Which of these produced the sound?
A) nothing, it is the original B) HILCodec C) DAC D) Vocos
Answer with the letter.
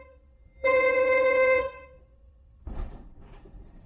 D